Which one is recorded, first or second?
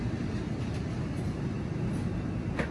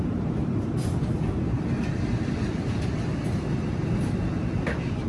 first